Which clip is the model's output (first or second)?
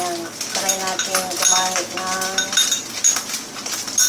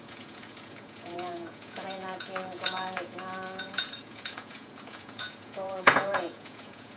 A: second